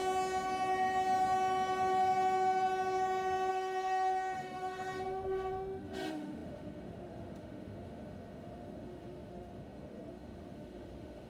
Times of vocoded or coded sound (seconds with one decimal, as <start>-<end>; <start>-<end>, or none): 3.5-11.3